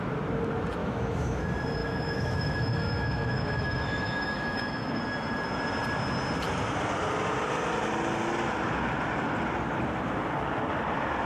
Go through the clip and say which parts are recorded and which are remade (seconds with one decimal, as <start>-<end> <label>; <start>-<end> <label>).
0.0-0.8 recorded; 0.8-1.4 remade; 1.4-1.8 recorded; 1.8-5.0 remade; 5.0-11.3 recorded